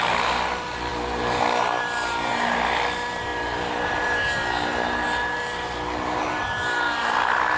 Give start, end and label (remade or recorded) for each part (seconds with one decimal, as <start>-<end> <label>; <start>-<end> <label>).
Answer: 0.0-7.6 remade